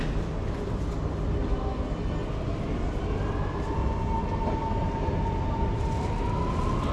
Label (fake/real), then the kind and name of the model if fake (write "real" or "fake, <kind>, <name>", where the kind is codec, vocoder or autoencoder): real